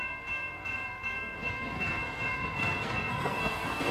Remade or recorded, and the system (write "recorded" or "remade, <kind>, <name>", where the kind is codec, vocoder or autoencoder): remade, codec, SNAC